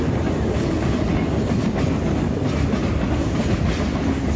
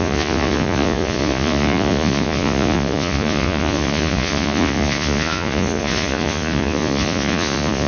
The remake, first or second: second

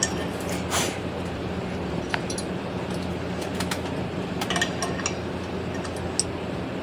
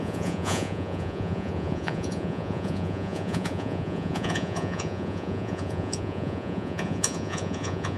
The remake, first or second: second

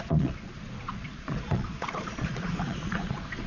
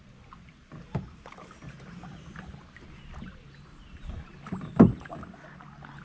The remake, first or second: first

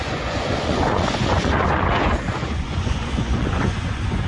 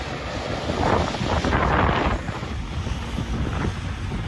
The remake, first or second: first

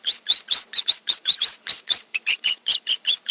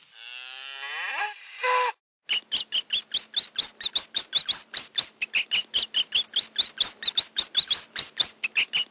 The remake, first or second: first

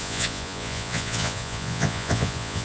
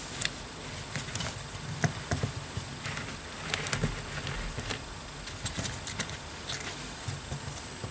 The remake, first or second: first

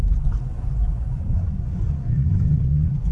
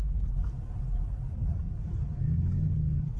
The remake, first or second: first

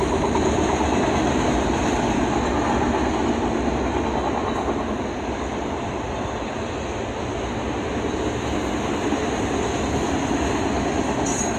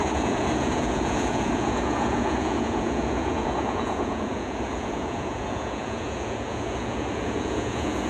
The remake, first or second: second